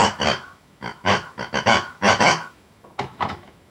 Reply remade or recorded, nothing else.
remade